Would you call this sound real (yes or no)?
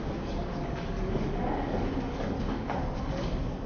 no